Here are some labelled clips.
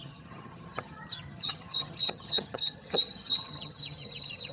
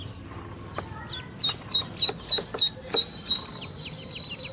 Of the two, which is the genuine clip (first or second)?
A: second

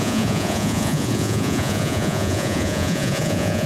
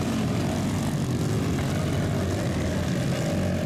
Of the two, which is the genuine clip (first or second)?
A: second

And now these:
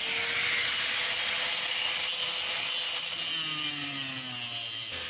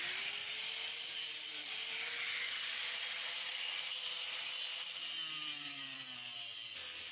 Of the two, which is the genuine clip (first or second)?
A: first